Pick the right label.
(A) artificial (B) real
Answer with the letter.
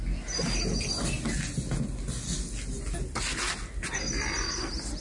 B